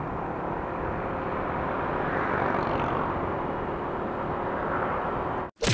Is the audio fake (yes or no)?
no